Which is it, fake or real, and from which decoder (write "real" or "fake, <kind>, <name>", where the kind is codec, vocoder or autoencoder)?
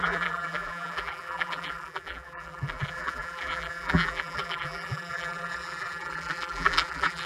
fake, vocoder, BigVGAN v2